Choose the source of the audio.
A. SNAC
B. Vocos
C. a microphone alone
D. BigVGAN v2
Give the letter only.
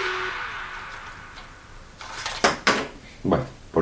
C